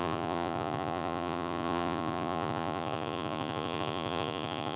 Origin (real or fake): fake